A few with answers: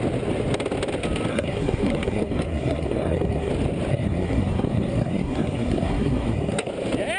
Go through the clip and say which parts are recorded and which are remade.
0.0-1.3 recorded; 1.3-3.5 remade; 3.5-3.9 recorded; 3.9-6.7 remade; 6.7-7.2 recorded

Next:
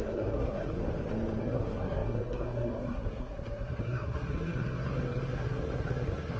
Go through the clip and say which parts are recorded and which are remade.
0.0-0.8 remade; 0.8-1.4 recorded; 1.4-6.4 remade

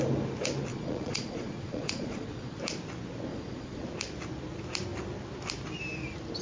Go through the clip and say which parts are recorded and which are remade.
0.0-0.7 recorded; 0.7-2.6 remade; 2.6-3.3 recorded; 3.3-3.8 remade; 3.8-6.4 recorded

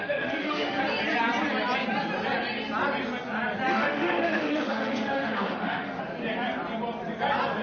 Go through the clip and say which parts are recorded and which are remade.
0.0-0.8 remade; 0.8-3.7 recorded; 3.7-6.0 remade; 6.0-7.6 recorded

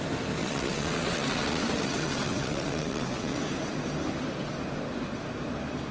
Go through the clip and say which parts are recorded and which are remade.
0.0-0.4 recorded; 0.4-3.4 remade; 3.4-5.9 recorded

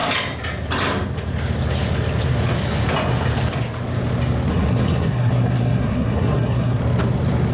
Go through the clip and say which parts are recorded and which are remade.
0.0-4.5 recorded; 4.5-6.8 remade; 6.8-7.5 recorded

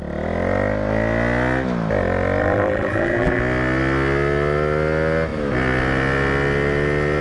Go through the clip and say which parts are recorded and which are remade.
0.0-2.4 recorded; 2.4-3.4 remade; 3.4-7.2 recorded

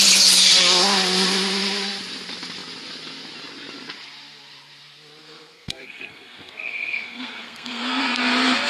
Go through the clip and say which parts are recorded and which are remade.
0.0-5.2 recorded; 5.2-8.2 remade; 8.2-8.7 recorded